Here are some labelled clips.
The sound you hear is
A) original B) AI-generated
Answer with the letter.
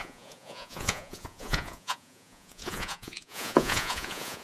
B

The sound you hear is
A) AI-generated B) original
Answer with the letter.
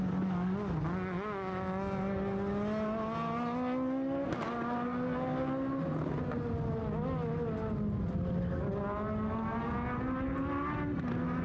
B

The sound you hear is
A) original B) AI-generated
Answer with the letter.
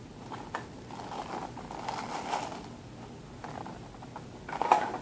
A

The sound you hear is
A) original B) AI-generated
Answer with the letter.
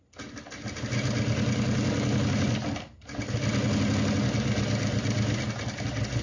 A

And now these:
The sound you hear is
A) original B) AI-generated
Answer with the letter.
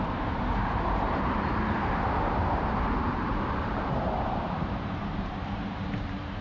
B